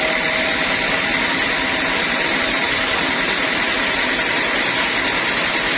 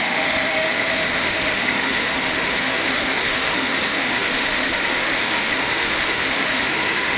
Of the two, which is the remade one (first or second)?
second